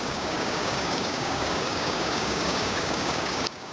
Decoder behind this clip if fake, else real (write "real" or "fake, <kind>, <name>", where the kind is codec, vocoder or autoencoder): fake, codec, DAC